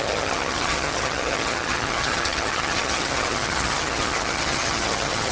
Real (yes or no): no